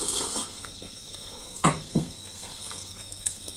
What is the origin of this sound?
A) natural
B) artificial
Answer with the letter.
B